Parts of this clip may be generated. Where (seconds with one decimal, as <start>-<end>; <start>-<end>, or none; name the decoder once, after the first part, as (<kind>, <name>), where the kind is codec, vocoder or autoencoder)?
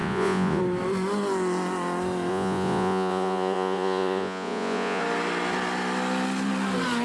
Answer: 0.0-0.6 (vocoder, Vocos); 2.3-5.0